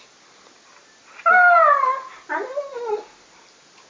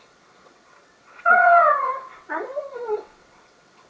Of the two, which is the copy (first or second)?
second